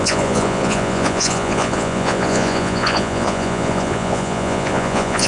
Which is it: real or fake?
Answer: fake